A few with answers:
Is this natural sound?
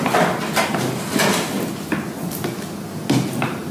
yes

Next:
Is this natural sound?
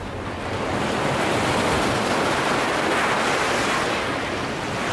yes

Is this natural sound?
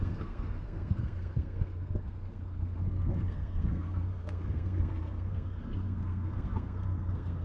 no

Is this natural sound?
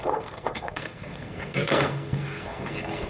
no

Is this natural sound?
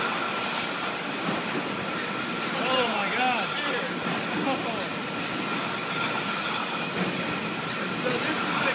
yes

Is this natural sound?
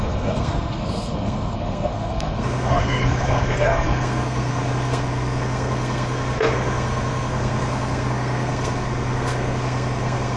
no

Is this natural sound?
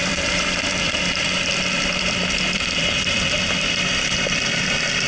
no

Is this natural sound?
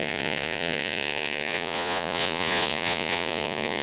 no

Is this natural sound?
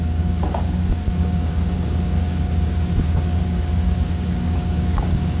no